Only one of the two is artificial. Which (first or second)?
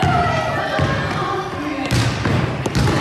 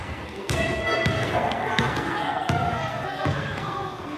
second